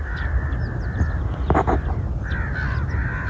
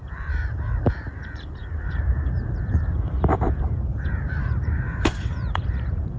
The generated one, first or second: second